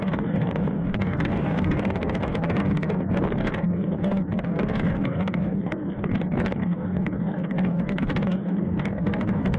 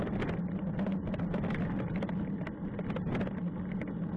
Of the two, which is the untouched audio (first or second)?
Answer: second